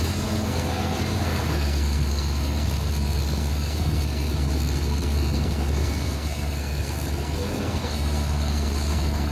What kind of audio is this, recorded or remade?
remade